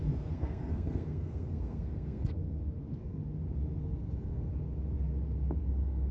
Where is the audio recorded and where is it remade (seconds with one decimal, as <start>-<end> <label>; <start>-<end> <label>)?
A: 0.0-3.2 remade; 3.2-3.8 recorded; 3.8-4.5 remade; 4.5-5.6 recorded; 5.6-6.1 remade